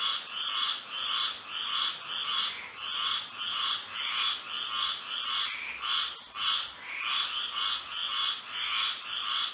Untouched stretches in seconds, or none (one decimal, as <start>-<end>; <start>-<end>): 0.0-9.5